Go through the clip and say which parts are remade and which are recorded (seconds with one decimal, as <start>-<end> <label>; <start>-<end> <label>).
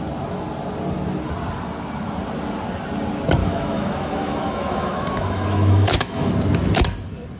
0.0-3.4 recorded; 3.4-6.3 remade; 6.3-7.4 recorded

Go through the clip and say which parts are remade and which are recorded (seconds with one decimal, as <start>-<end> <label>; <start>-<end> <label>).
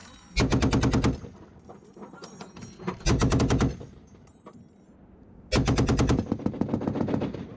0.0-7.6 recorded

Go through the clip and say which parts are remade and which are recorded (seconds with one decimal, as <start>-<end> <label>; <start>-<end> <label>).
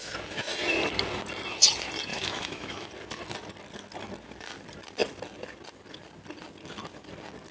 0.0-2.1 recorded; 2.1-2.9 remade; 2.9-7.5 recorded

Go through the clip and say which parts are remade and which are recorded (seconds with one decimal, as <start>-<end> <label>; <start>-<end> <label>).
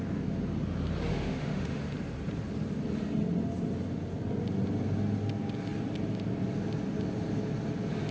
0.0-1.1 recorded; 1.1-1.8 remade; 1.8-8.1 recorded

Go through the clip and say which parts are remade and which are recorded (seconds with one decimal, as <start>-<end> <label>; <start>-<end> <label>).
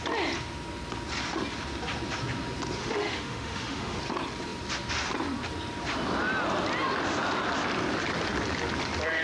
0.0-2.8 recorded; 2.8-4.0 remade; 4.0-9.2 recorded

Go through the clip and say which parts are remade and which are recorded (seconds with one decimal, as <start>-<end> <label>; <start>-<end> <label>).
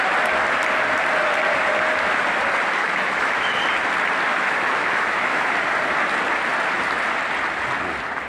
0.0-2.8 recorded; 2.8-3.6 remade; 3.6-4.3 recorded; 4.3-5.5 remade; 5.5-8.3 recorded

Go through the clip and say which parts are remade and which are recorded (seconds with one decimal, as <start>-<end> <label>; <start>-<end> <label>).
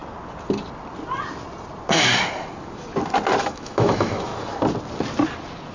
0.0-3.4 recorded; 3.4-4.3 remade; 4.3-5.7 recorded